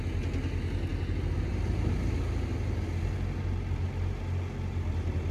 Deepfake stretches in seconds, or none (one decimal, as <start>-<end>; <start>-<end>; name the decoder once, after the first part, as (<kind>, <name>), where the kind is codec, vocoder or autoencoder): none